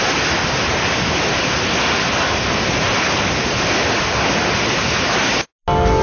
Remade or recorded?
recorded